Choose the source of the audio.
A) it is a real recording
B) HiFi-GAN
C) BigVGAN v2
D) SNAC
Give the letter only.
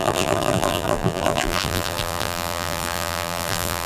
C